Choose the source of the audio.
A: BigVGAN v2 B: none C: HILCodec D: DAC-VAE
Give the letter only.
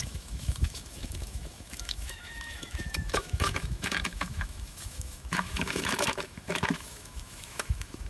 D